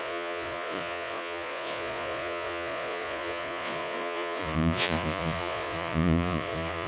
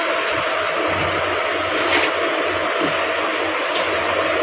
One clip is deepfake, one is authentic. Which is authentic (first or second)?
second